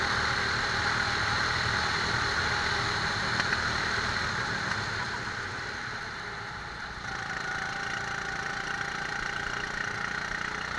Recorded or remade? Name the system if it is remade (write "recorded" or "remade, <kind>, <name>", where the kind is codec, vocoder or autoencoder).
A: recorded